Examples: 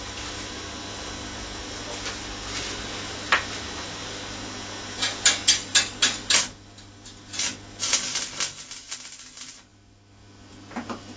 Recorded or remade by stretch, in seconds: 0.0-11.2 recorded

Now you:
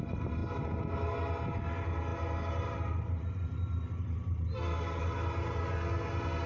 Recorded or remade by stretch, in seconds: 0.0-6.5 recorded

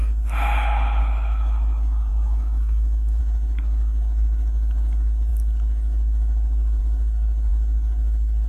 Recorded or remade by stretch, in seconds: 0.0-2.1 recorded; 2.1-3.2 remade; 3.2-8.5 recorded

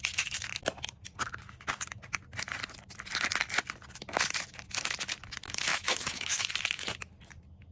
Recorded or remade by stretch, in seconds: 0.0-5.7 recorded; 5.7-6.5 remade; 6.5-7.7 recorded

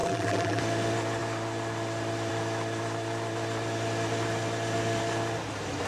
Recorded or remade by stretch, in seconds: 0.0-0.6 remade; 0.6-5.9 recorded

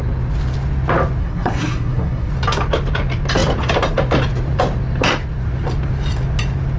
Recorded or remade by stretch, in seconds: 0.0-1.2 recorded; 1.2-2.3 remade; 2.3-6.8 recorded